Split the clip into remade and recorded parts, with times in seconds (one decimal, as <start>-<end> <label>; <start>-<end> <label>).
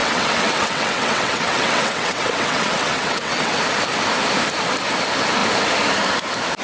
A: 0.0-3.6 remade; 3.6-6.6 recorded